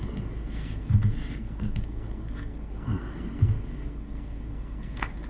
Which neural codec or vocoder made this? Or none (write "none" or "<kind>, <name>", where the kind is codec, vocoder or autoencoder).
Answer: codec, SNAC